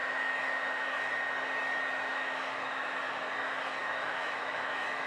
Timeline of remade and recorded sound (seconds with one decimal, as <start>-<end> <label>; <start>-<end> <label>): 0.0-1.1 remade; 1.1-2.1 recorded; 2.1-3.0 remade; 3.0-3.8 recorded; 3.8-5.1 remade

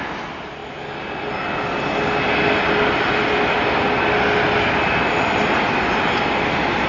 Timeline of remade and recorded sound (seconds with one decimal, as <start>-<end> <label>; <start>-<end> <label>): 0.0-6.9 recorded

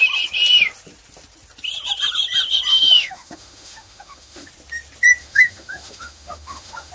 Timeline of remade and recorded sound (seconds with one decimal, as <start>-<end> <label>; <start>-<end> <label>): 0.0-2.7 recorded; 2.7-4.5 remade; 4.5-5.2 recorded; 5.2-6.9 remade

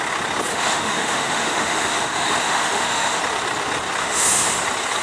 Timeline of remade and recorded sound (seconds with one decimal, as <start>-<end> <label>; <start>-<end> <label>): 0.0-0.5 recorded; 0.5-3.2 remade; 3.2-4.0 recorded; 4.0-4.6 remade; 4.6-5.0 recorded

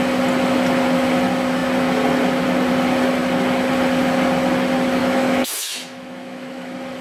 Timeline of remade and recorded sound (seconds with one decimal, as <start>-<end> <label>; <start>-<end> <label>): 0.0-5.0 recorded; 5.0-7.0 remade

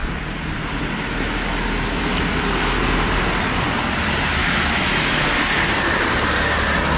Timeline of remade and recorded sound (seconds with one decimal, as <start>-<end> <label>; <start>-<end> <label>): 0.0-4.4 recorded; 4.4-5.2 remade; 5.2-7.0 recorded

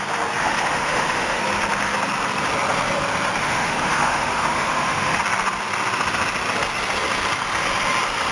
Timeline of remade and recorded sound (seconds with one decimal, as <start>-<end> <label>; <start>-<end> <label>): 0.0-0.4 recorded; 0.4-1.4 remade; 1.4-3.4 recorded; 3.4-5.2 remade; 5.2-8.3 recorded